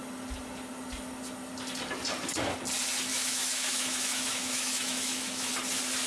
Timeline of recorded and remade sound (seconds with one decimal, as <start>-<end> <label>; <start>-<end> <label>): 0.0-3.1 recorded; 3.1-5.5 remade; 5.5-6.1 recorded